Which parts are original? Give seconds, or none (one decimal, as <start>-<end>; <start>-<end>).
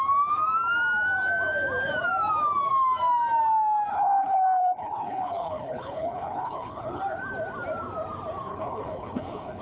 0.0-3.9; 7.0-8.5